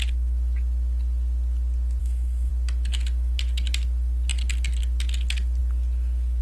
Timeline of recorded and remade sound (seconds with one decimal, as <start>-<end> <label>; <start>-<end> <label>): 0.0-2.0 recorded; 2.0-2.5 remade; 2.5-6.4 recorded